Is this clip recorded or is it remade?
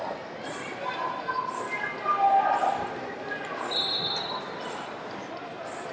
recorded